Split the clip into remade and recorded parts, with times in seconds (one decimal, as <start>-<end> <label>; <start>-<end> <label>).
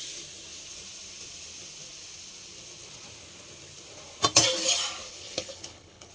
0.0-5.1 recorded; 5.1-6.1 remade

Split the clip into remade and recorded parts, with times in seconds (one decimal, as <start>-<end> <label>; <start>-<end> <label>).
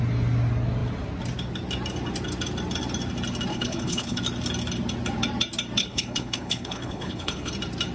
0.0-3.5 recorded; 3.5-4.2 remade; 4.2-5.8 recorded; 5.8-7.5 remade; 7.5-7.9 recorded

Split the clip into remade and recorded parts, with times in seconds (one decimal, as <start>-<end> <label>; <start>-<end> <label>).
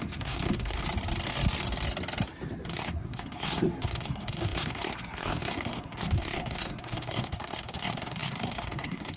0.0-0.8 remade; 0.8-2.7 recorded; 2.7-9.2 remade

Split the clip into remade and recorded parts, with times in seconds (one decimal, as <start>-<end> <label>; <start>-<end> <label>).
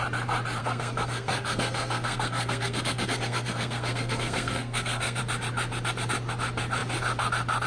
0.0-0.6 recorded; 0.6-5.2 remade; 5.2-7.7 recorded